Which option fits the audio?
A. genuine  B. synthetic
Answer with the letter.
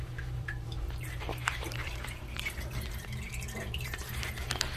B